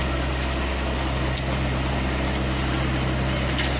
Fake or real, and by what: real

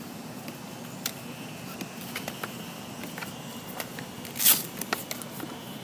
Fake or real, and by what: real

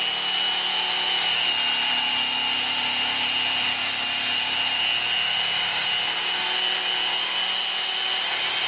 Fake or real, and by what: real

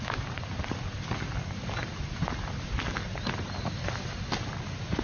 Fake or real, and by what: real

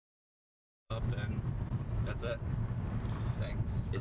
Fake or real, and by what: fake, vocoder, BigVGAN v2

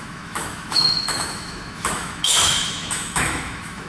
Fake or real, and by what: fake, autoencoder, DAC-VAE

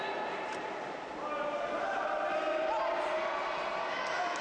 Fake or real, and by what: real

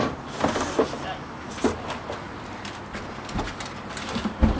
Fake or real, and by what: real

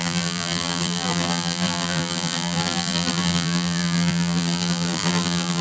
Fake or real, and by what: fake, vocoder, BigVGAN v2